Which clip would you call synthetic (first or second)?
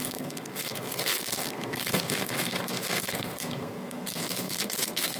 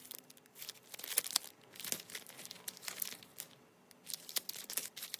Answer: first